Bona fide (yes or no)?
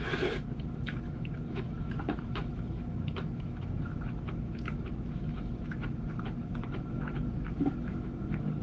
no